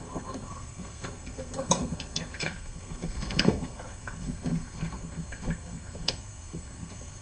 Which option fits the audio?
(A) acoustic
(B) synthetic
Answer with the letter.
B